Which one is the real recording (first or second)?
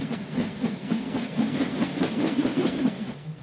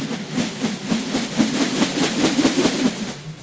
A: second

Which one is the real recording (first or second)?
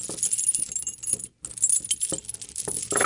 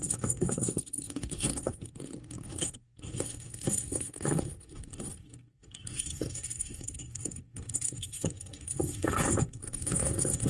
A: first